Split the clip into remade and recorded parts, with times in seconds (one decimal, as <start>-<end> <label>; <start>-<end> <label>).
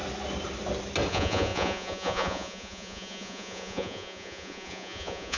0.0-1.1 recorded; 1.1-5.4 remade